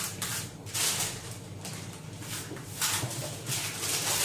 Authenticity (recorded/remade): remade